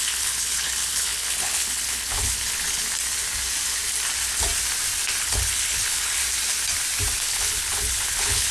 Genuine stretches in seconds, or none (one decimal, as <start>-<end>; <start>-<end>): 2.8-5.2; 6.2-7.2